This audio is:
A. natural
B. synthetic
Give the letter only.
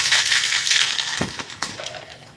B